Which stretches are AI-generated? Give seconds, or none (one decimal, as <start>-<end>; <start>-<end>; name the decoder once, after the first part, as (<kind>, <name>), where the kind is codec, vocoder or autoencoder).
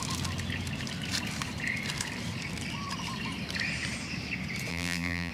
4.7-5.3 (vocoder, BigVGAN v2)